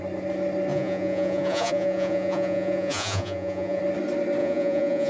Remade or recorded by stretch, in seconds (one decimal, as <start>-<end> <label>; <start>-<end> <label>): 0.0-0.7 recorded; 0.7-3.8 remade; 3.8-4.4 recorded; 4.4-5.1 remade